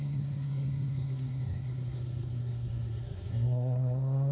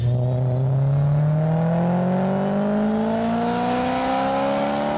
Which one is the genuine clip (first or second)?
second